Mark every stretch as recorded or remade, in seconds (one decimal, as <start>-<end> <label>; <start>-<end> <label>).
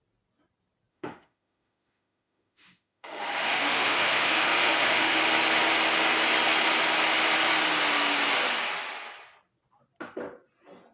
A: 0.0-0.9 recorded; 0.9-5.2 remade; 5.2-10.9 recorded